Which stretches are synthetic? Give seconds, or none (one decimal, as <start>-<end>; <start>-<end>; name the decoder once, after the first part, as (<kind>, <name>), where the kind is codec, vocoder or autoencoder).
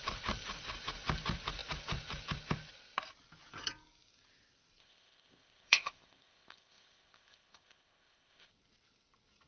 4.8-8.5 (codec, ZipCodec)